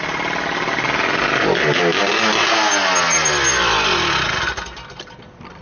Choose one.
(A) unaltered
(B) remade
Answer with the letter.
A